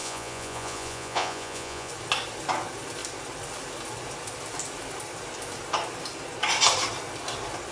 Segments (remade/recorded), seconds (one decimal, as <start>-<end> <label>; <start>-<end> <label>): 0.0-1.9 remade; 1.9-7.7 recorded